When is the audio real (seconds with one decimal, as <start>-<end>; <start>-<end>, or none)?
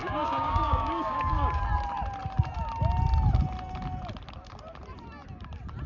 1.6-5.9